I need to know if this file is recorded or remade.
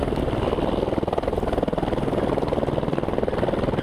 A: recorded